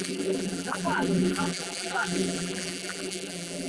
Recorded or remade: remade